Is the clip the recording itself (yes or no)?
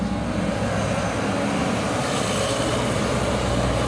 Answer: yes